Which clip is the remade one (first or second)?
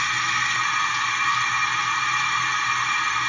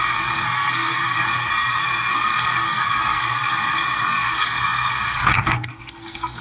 second